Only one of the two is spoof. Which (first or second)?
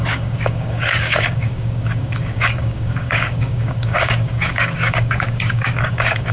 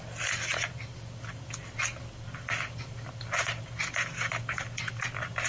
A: first